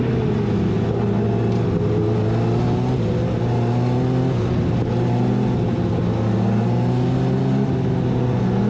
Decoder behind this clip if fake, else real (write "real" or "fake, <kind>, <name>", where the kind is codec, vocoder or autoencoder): real